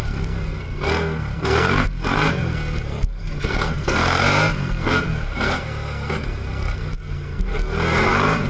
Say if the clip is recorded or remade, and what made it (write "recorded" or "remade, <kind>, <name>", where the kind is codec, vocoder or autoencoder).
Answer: remade, codec, SNAC